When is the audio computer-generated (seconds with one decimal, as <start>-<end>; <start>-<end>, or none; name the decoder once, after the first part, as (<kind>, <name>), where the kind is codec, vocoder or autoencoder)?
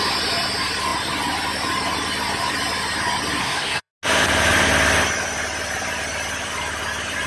3.4-3.9 (codec, SNAC)